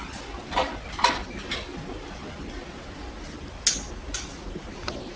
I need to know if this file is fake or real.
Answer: real